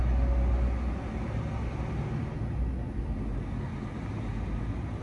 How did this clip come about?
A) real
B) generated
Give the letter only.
A